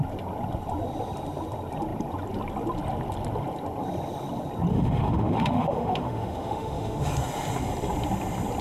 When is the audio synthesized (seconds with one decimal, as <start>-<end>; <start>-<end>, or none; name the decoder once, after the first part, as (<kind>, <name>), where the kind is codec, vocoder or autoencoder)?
4.7-7.1 (autoencoder, DAC-VAE)